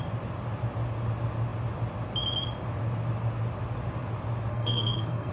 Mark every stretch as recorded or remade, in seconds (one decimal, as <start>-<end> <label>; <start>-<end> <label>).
0.0-4.5 recorded; 4.5-5.3 remade